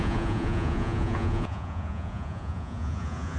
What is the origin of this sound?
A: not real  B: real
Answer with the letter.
A